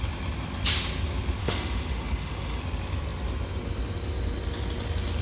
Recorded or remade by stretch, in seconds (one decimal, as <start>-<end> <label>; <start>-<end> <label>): 0.0-1.4 recorded; 1.4-2.6 remade; 2.6-5.2 recorded